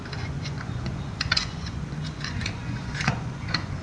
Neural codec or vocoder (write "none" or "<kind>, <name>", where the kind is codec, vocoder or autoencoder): vocoder, Vocos